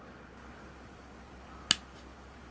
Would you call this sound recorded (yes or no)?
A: yes